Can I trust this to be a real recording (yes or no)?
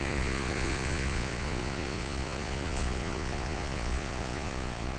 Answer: no